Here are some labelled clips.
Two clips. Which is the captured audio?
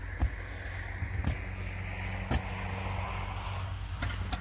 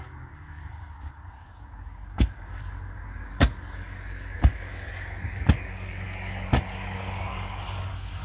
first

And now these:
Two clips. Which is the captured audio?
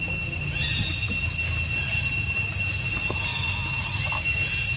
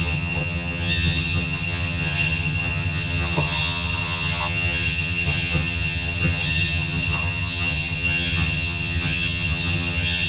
first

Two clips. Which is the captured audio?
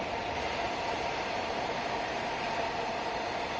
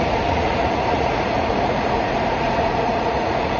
first